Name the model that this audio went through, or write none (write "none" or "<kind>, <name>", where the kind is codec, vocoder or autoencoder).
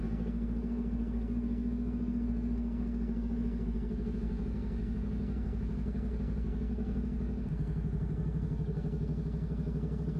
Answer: codec, SNAC